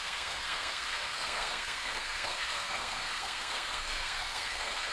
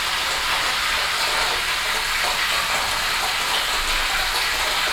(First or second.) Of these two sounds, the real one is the second